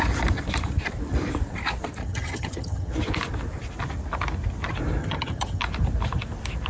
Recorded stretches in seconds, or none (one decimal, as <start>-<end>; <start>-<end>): 0.0-2.0; 2.9-5.0; 5.6-6.7